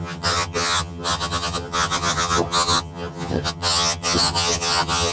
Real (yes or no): no